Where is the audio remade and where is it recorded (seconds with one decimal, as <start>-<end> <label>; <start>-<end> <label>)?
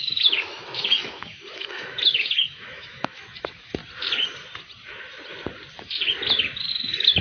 0.0-3.8 remade; 3.8-6.7 recorded; 6.7-7.2 remade